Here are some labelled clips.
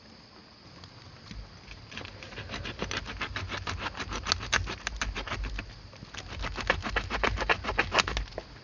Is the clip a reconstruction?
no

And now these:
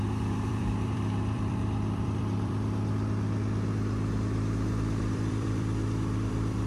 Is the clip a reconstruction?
yes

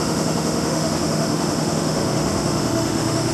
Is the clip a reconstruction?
yes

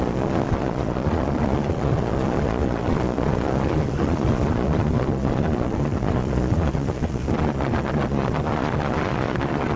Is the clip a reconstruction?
yes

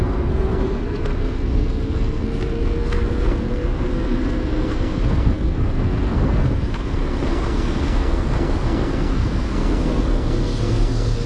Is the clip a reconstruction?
yes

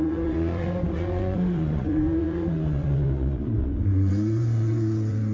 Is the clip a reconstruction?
yes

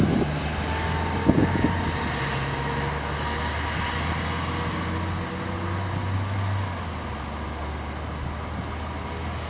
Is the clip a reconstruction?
no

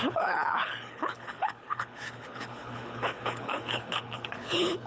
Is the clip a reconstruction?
yes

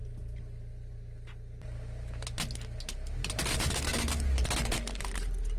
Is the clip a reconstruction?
no